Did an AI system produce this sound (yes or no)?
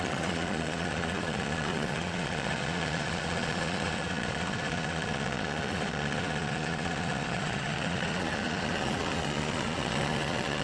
yes